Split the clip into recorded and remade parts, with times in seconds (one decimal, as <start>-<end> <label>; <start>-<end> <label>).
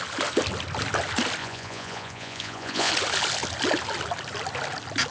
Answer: 0.0-1.4 recorded; 1.4-2.9 remade; 2.9-5.1 recorded